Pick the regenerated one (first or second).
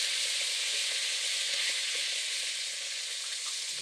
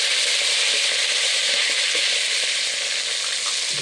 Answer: first